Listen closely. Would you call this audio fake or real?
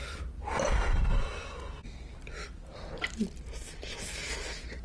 real